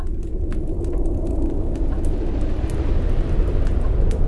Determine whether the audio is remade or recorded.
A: recorded